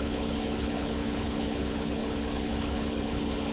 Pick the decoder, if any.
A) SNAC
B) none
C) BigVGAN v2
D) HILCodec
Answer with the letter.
D